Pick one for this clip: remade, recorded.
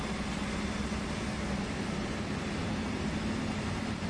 recorded